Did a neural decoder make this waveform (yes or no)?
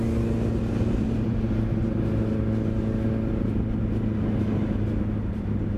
no